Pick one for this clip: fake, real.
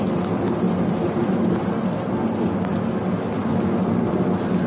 real